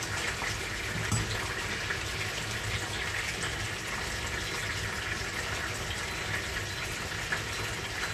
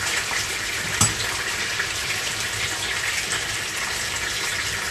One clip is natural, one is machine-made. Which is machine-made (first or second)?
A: second